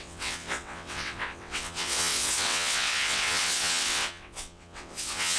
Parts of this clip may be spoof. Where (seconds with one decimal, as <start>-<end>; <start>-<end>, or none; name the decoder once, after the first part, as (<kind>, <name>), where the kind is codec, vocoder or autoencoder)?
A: 0.0-5.4 (vocoder, WaveNeXt)